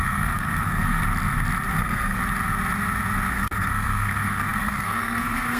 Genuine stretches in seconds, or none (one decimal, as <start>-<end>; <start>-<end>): 1.0-1.7; 2.2-3.3